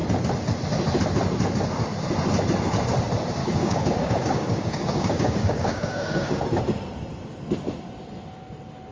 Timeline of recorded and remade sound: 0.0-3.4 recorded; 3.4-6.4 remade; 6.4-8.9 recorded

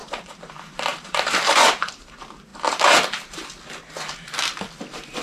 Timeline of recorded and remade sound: 0.0-0.5 remade; 0.5-0.9 recorded; 0.9-1.9 remade; 1.9-5.2 recorded

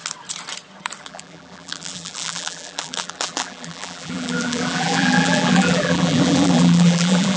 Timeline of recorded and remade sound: 0.0-1.0 recorded; 1.0-7.4 remade

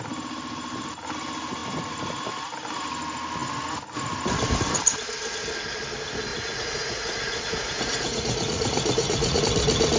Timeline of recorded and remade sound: 0.0-6.3 recorded; 6.3-9.4 remade; 9.4-10.0 recorded

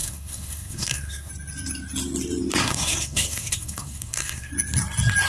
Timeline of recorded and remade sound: 0.0-1.3 remade; 1.3-2.6 recorded; 2.6-4.5 remade; 4.5-5.3 recorded

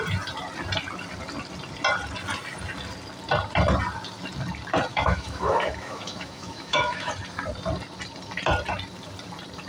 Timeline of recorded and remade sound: 0.0-4.9 recorded; 4.9-7.1 remade; 7.1-9.7 recorded

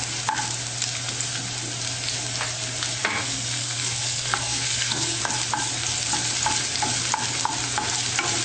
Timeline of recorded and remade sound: 0.0-3.0 recorded; 3.0-5.2 remade; 5.2-8.4 recorded

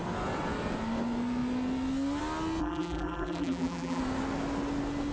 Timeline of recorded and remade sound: 0.0-2.6 recorded; 2.6-4.0 remade; 4.0-5.1 recorded